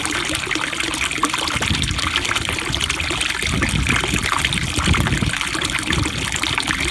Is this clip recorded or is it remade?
recorded